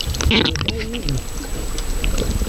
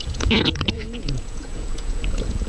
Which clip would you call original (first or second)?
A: first